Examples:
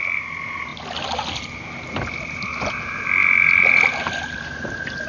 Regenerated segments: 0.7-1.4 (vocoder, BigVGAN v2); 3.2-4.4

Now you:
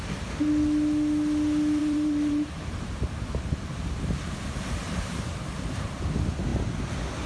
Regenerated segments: 1.8-6.0 (vocoder, BigVGAN v2)

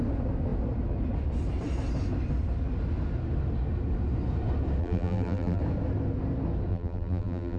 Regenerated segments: 4.8-5.6 (vocoder, BigVGAN v2); 6.7-7.6

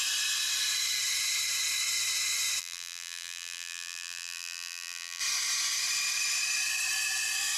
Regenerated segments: 2.6-5.2 (vocoder, BigVGAN v2)

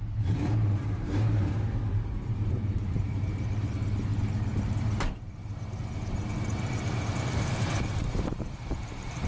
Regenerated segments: 0.0-9.3 (vocoder, BigVGAN v2)